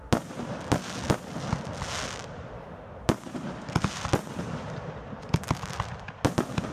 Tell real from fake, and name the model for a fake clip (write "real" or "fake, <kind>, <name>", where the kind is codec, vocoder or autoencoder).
real